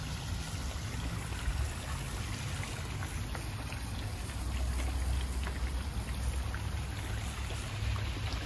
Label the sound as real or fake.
real